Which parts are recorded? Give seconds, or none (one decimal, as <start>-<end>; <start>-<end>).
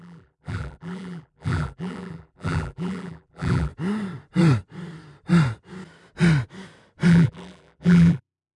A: 3.7-7.1